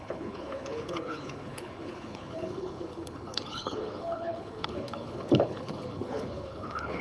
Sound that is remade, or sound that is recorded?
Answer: remade